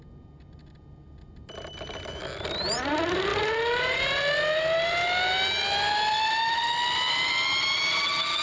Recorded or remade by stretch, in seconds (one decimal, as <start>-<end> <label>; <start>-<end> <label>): 0.0-8.4 recorded